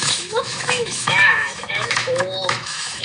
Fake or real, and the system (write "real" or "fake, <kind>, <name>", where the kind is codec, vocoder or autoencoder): fake, autoencoder, DAC-VAE